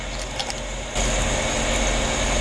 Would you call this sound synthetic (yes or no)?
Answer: no